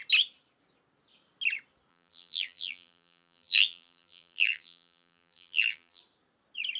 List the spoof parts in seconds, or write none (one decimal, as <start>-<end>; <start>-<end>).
1.9-6.0